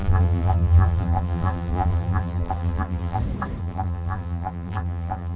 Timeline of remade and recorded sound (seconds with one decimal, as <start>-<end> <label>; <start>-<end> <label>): 0.0-3.2 remade; 3.2-3.6 recorded; 3.6-5.4 remade